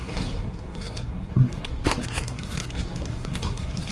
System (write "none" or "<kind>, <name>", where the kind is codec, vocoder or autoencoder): codec, SNAC